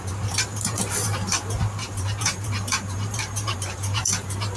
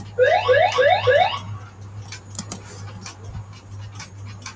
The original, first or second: second